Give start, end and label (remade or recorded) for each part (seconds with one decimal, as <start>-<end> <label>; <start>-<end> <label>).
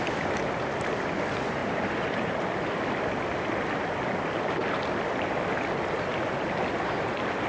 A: 0.0-1.6 recorded; 1.6-2.4 remade; 2.4-7.5 recorded